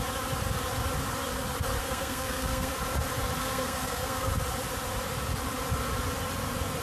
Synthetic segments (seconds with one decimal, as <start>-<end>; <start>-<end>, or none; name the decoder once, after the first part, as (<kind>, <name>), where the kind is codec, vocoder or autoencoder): 1.8-2.7 (codec, SNAC); 3.4-4.3